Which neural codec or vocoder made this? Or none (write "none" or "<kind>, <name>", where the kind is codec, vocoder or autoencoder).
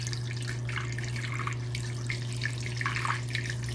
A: none